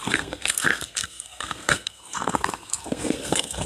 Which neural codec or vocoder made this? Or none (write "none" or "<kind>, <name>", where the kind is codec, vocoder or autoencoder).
codec, SNAC